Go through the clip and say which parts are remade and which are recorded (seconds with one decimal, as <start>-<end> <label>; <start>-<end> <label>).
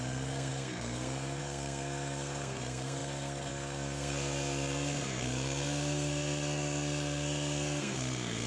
0.0-8.5 remade